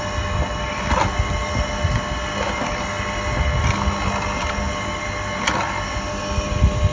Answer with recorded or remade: recorded